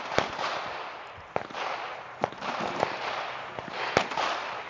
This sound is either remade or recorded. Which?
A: recorded